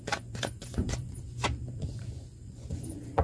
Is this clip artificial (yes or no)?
yes